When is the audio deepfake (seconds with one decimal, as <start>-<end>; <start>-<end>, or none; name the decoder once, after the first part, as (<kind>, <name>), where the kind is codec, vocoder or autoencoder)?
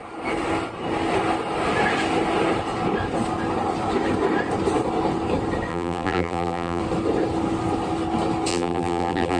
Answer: 5.7-6.8 (vocoder, BigVGAN v2); 8.5-9.4